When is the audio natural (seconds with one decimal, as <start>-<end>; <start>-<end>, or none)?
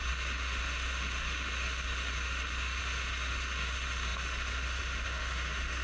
none